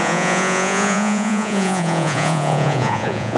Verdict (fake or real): fake